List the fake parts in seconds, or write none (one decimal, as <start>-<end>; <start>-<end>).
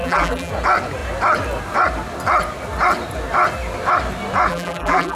0.0-0.5; 4.5-5.2